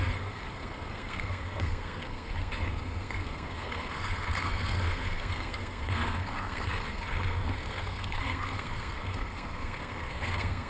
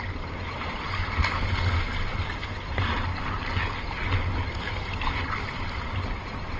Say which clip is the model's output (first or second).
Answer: first